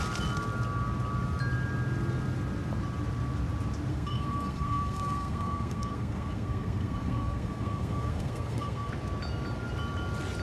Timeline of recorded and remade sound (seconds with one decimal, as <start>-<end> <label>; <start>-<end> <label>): 0.0-3.9 recorded; 3.9-8.9 remade; 8.9-10.4 recorded